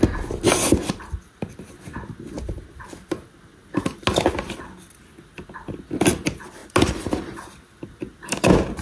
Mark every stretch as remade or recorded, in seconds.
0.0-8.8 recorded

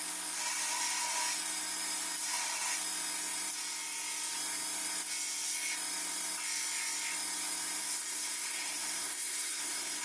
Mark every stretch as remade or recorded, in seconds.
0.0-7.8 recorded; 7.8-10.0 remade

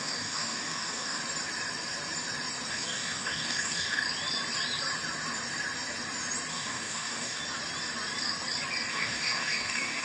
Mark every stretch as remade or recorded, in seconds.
0.0-1.2 remade; 1.2-2.7 recorded; 2.7-4.0 remade; 4.0-6.5 recorded; 6.5-7.4 remade; 7.4-8.9 recorded; 8.9-10.0 remade

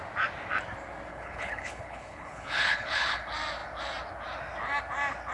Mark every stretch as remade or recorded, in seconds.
0.0-1.1 recorded; 1.1-3.2 remade; 3.2-5.3 recorded

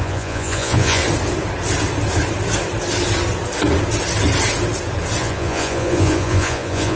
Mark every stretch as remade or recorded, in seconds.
0.0-1.0 remade; 1.0-5.2 recorded; 5.2-7.0 remade

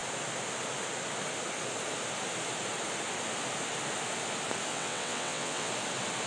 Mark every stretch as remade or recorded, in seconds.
0.0-4.7 recorded; 4.7-5.7 remade; 5.7-6.3 recorded

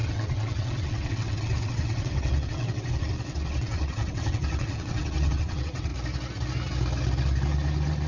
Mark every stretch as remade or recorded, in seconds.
0.0-5.9 remade; 5.9-8.1 recorded

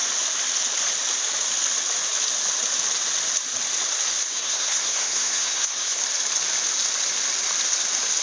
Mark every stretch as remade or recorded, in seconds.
0.0-4.3 recorded; 4.3-6.0 remade; 6.0-8.2 recorded